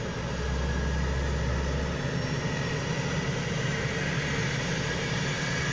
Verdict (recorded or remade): recorded